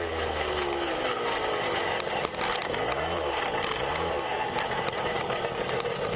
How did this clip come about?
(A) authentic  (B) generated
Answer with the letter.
A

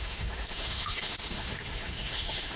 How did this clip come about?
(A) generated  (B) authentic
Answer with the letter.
A